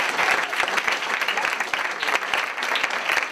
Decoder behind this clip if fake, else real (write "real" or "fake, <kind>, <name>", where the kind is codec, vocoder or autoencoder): real